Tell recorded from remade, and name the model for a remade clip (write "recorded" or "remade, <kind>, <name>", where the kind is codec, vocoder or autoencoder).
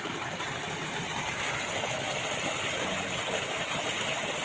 recorded